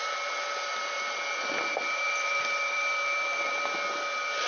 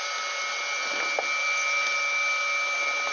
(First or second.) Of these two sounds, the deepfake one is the first